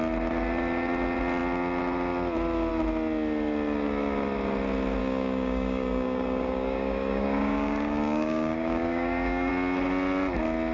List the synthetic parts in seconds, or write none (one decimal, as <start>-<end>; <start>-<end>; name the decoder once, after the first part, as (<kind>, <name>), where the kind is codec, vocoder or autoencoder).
5.0-9.5 (codec, DAC)